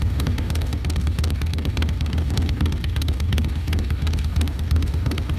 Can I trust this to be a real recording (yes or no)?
no